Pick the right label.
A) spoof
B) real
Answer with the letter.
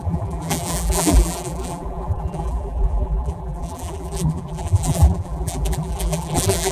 A